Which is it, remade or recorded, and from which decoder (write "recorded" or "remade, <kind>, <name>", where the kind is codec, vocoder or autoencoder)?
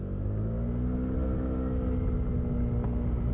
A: recorded